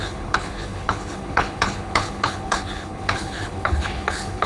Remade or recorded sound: remade